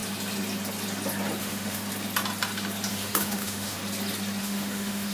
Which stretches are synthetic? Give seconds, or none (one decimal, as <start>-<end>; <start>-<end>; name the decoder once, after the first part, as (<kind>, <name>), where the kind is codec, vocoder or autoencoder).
1.4-1.8 (autoencoder, DAC-VAE); 2.9-3.8; 4.4-5.1